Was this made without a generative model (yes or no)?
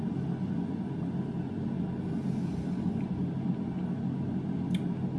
yes